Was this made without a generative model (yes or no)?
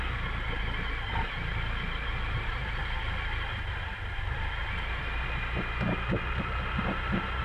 yes